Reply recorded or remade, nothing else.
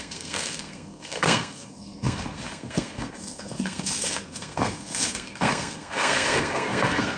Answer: remade